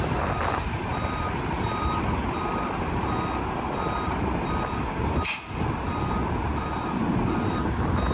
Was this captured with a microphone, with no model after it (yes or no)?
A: no